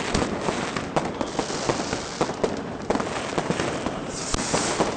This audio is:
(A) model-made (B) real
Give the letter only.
B